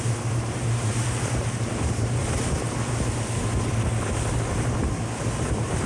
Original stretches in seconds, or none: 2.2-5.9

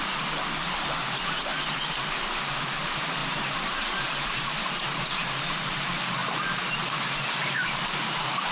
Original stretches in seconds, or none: 6.2-7.2

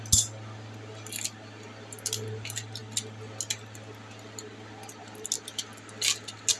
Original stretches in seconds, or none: 0.0-6.6

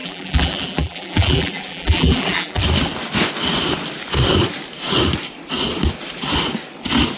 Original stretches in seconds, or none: 2.6-7.2